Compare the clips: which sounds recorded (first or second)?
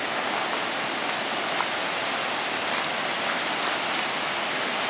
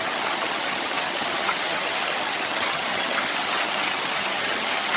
first